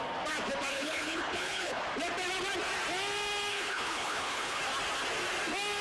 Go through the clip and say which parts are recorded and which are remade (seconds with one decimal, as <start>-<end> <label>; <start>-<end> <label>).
0.0-0.7 recorded; 0.7-1.8 remade; 1.8-3.5 recorded; 3.5-4.6 remade; 4.6-5.8 recorded

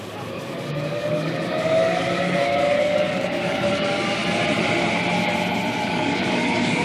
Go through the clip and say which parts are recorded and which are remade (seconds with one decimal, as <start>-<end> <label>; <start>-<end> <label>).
0.0-4.2 remade; 4.2-5.7 recorded; 5.7-6.8 remade

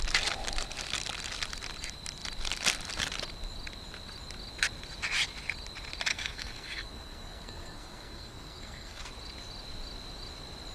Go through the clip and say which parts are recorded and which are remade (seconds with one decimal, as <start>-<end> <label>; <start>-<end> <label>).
0.0-6.1 recorded; 6.1-9.1 remade; 9.1-10.7 recorded

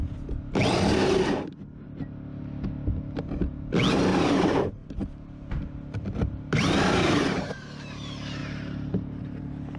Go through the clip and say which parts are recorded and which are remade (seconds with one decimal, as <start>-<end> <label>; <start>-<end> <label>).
0.0-3.9 recorded; 3.9-9.8 remade

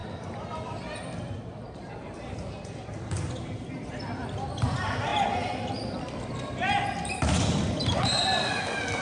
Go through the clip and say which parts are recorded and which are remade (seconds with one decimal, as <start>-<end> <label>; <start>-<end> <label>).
0.0-9.0 remade

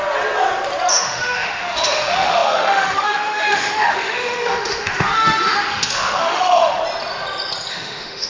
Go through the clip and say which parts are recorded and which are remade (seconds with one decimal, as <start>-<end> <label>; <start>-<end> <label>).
0.0-0.9 recorded; 0.9-6.8 remade; 6.8-7.7 recorded; 7.7-8.3 remade

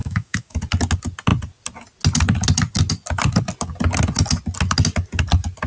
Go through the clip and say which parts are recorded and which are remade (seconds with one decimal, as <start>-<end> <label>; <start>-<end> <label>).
0.0-0.6 remade; 0.6-5.7 recorded